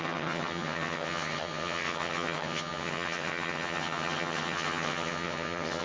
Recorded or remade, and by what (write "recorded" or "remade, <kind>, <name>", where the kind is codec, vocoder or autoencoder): remade, vocoder, HiFi-GAN